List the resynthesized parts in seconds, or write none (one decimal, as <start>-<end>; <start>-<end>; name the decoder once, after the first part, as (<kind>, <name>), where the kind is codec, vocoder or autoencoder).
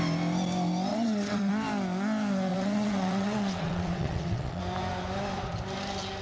0.9-1.5 (vocoder, WaveNeXt); 2.5-4.6